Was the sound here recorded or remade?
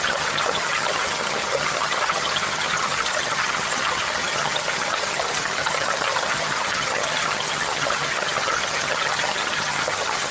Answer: remade